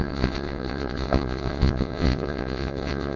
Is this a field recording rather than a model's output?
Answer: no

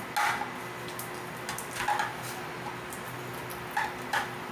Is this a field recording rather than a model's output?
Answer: yes